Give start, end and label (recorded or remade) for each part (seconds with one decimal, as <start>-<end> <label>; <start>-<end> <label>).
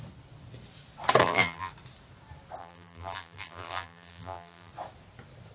0.0-1.2 recorded; 1.2-1.7 remade; 1.7-2.6 recorded; 2.6-4.7 remade; 4.7-5.5 recorded